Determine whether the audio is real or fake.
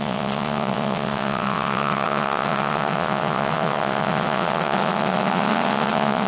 fake